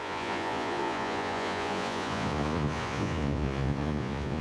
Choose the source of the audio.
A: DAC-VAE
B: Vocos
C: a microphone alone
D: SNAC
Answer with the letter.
B